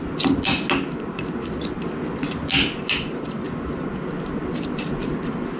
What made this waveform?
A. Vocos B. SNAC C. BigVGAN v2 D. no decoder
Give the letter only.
D